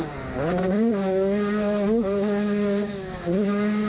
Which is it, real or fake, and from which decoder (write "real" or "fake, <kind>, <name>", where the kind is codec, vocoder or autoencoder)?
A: fake, codec, DAC